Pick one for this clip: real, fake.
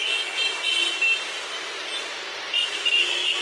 real